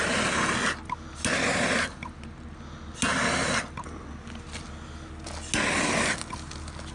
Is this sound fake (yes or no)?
no